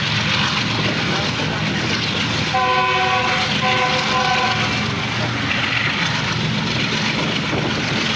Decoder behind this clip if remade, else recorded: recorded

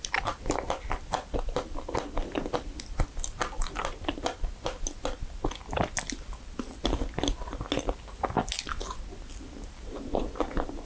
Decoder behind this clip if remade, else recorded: recorded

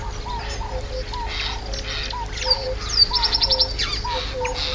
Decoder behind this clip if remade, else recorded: recorded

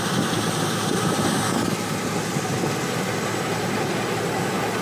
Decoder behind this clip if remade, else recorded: recorded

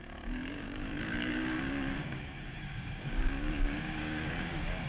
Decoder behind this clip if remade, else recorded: remade, codec, DAC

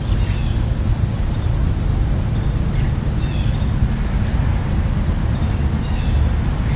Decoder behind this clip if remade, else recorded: recorded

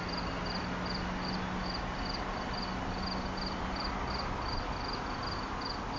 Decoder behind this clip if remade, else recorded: recorded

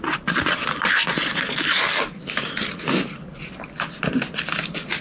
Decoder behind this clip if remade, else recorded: recorded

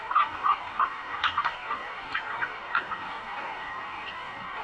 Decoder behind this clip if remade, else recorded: remade, codec, DAC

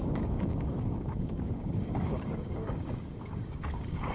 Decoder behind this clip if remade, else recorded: remade, codec, DAC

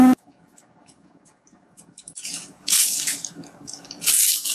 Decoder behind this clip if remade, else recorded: remade, codec, DAC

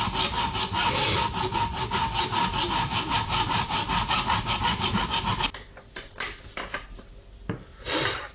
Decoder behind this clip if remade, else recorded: recorded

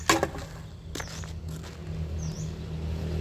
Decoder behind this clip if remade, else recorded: recorded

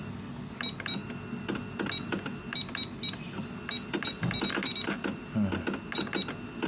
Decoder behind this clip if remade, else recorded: recorded